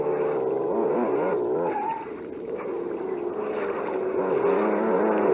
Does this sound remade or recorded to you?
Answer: recorded